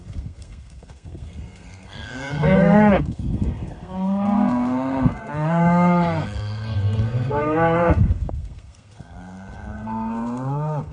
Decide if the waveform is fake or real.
fake